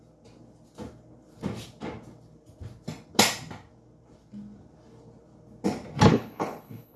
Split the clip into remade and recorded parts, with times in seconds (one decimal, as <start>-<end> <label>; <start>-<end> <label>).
0.0-6.1 recorded; 6.1-7.0 remade